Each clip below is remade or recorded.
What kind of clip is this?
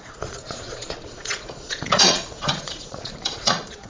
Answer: remade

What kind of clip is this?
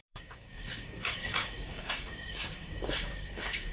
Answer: remade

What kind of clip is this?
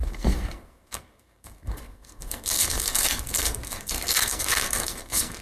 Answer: remade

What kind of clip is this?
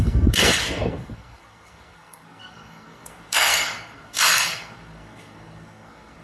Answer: remade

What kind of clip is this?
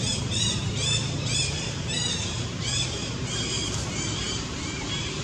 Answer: remade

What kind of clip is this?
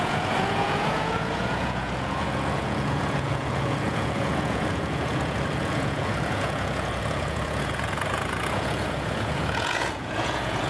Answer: remade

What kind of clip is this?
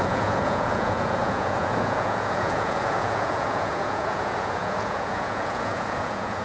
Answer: remade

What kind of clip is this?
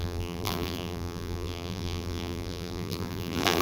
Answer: remade